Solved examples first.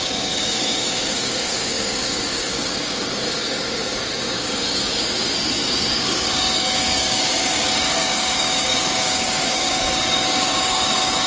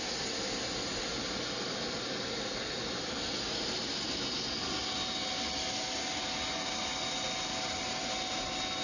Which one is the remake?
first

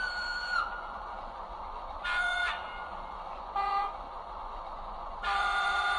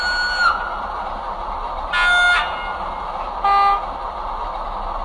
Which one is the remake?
first